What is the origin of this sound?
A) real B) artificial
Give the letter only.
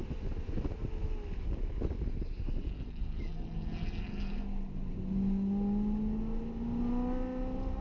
A